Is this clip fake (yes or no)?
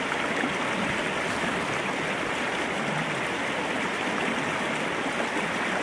no